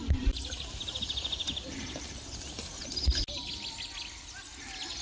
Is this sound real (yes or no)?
yes